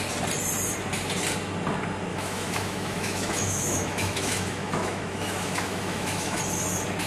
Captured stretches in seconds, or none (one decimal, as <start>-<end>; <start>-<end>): 0.0-2.1; 6.4-7.1